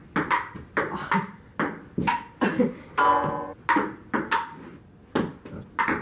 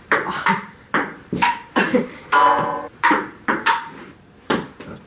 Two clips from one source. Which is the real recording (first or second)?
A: first